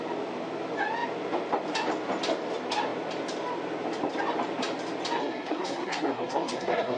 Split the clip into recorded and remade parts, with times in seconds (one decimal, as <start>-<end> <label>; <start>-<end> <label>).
0.0-5.2 recorded; 5.2-7.0 remade

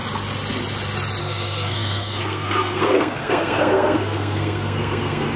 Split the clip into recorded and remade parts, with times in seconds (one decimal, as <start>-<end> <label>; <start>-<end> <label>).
0.0-1.2 recorded; 1.2-5.4 remade

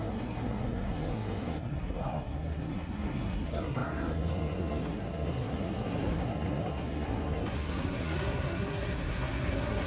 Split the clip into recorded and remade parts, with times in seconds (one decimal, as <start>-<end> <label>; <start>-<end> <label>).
0.0-9.9 remade

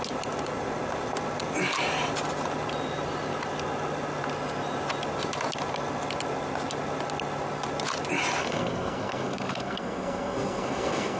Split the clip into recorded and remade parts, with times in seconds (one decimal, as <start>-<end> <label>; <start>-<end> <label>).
0.0-8.4 recorded; 8.4-11.2 remade